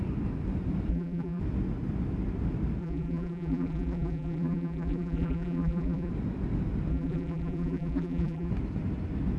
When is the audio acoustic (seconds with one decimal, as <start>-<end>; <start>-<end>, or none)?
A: 0.0-0.9; 1.4-2.8; 6.1-6.9; 8.5-9.4